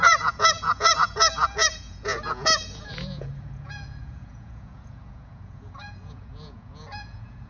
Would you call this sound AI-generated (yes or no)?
yes